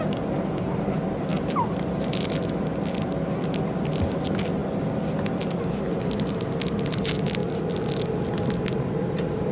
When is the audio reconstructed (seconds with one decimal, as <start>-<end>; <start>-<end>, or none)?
none